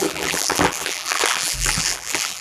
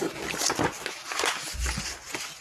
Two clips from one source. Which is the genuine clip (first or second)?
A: second